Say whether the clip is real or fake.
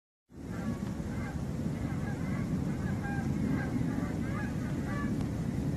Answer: real